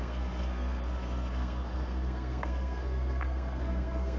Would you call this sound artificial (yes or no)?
yes